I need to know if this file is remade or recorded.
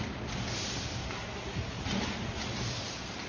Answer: recorded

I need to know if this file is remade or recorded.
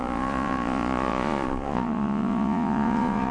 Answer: remade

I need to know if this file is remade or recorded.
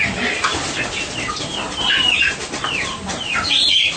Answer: recorded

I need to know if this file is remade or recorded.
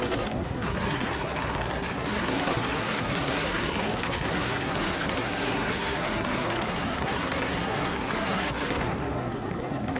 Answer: remade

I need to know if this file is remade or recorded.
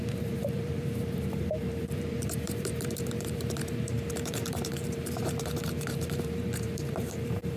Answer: remade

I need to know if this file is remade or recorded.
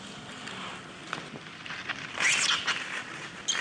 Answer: recorded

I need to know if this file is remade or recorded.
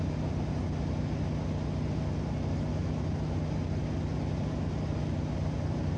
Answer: recorded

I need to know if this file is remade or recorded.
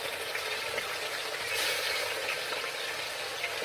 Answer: recorded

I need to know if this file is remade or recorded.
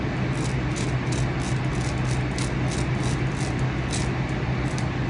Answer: recorded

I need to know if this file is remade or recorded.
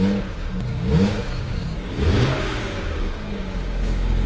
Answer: remade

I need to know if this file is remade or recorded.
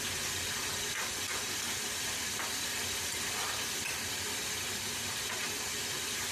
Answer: recorded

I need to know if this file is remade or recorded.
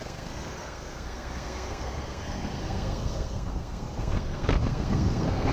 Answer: remade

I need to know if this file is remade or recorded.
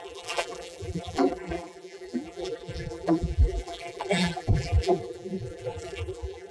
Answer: remade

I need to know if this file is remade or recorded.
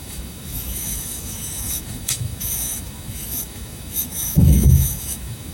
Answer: remade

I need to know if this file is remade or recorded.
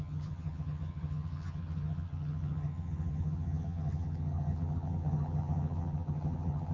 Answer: remade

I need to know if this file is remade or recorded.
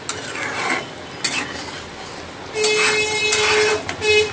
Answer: recorded